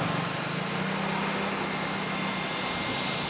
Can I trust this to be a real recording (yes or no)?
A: yes